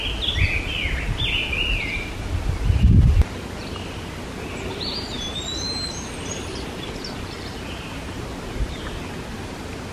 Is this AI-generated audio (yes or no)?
no